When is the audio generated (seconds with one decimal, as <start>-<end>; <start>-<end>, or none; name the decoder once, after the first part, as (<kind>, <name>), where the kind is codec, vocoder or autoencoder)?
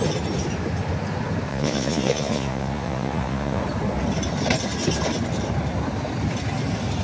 1.5-3.6 (vocoder, Vocos)